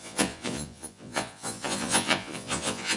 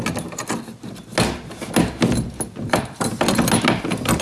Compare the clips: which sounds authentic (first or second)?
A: second